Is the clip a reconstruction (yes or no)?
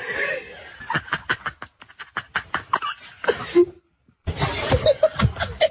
no